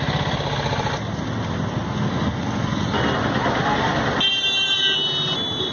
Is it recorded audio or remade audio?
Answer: recorded